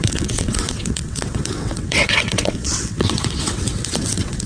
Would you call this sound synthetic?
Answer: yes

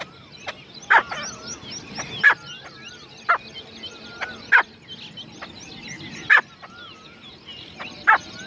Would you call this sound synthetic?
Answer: no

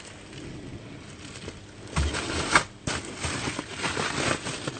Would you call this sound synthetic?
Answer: no